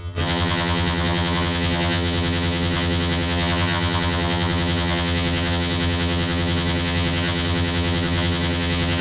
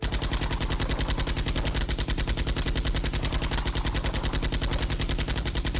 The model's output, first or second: first